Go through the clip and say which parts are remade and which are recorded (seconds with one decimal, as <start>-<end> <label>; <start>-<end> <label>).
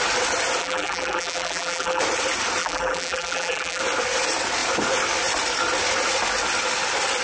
0.0-0.6 recorded; 0.6-2.0 remade; 2.0-2.6 recorded; 2.6-3.8 remade; 3.8-7.2 recorded